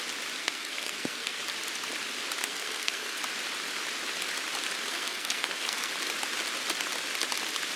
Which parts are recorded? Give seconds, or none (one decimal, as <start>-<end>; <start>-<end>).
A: 0.0-0.4; 1.4-2.4; 3.2-4.9; 5.9-7.8